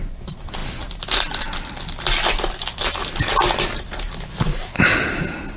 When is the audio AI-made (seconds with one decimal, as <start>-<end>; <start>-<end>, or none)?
none